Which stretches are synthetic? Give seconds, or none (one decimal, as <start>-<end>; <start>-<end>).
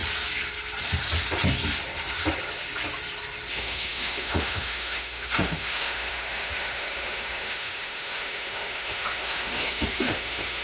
3.5-10.6